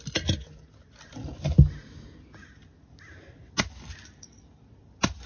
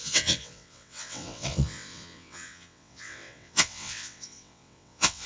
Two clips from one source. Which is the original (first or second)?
first